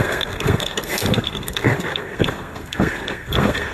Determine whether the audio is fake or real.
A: fake